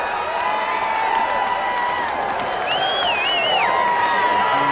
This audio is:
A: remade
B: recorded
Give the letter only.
B